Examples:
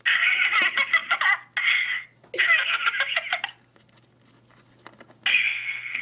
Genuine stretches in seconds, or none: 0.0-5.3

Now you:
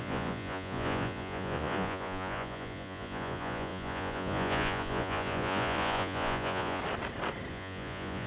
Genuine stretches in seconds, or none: 6.8-7.5

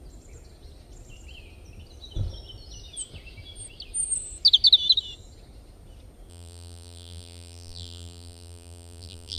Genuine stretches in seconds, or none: 0.0-6.3

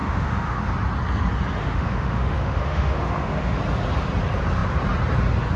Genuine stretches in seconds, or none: 0.7-1.6; 3.6-5.6

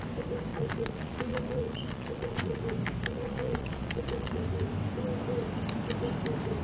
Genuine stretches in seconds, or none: 0.0-0.5; 2.6-3.1; 4.4-6.6

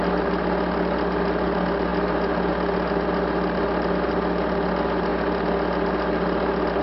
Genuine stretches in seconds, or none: 0.0-6.8

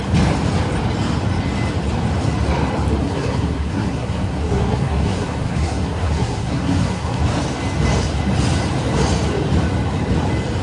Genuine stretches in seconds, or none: 0.0-3.0; 7.2-10.6